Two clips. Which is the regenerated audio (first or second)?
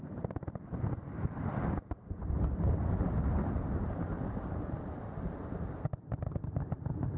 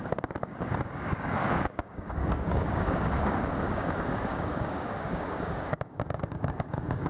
second